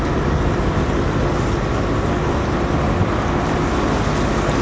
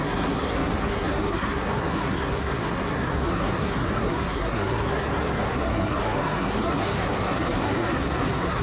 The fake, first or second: second